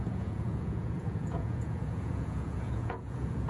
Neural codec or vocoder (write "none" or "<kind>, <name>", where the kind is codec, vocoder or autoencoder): vocoder, Vocos